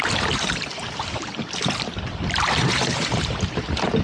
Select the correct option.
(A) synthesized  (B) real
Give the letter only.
A